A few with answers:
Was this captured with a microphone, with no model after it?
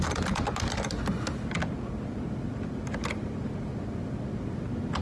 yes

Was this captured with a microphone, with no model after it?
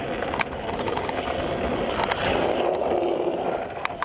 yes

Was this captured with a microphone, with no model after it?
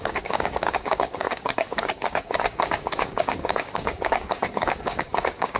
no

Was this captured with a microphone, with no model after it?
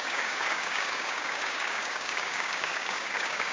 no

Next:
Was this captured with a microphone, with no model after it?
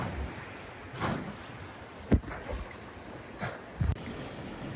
yes